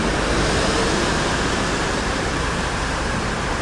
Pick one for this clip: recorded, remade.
remade